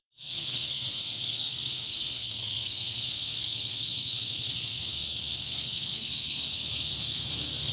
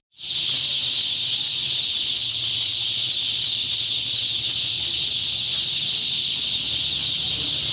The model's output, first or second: first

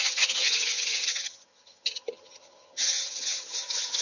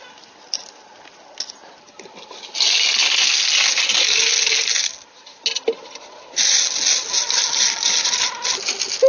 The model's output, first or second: first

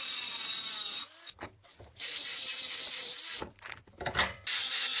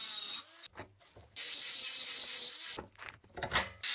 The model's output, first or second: first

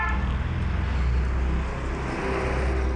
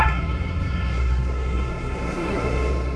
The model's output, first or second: second